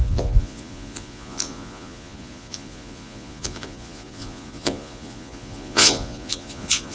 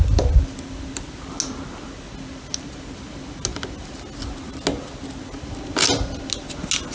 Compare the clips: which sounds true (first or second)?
second